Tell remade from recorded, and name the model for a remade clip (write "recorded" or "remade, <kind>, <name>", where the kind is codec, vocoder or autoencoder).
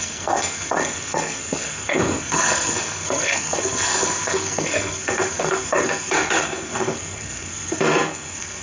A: remade, codec, SNAC